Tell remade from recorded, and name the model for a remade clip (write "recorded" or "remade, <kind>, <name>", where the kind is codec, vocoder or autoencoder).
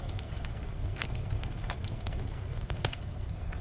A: remade, codec, SNAC